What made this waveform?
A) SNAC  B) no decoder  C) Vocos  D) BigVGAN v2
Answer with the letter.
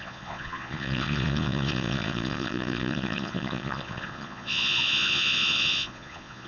C